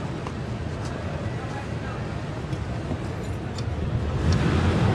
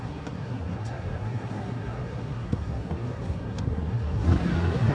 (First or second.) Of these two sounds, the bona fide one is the first